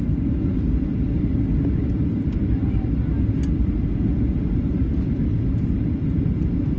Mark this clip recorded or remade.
recorded